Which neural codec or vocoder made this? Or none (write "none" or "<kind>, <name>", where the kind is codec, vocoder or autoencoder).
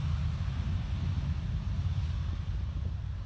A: none